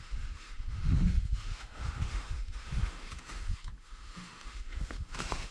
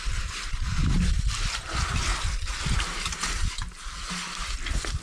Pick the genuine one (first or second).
second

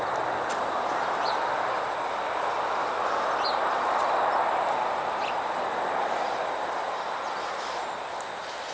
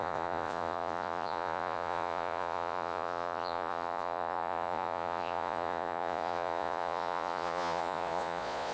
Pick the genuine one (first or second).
first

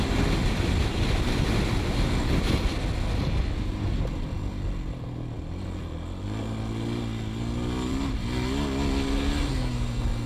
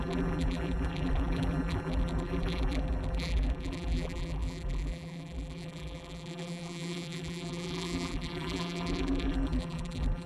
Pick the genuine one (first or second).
first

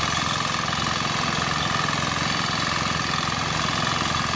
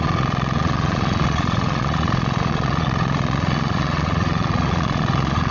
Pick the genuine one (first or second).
first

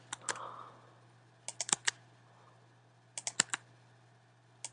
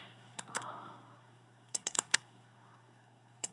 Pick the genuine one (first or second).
first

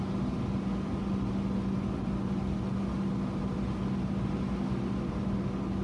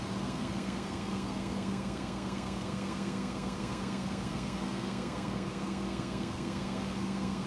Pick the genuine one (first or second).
first